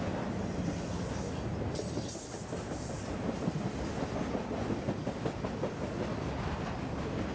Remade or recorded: recorded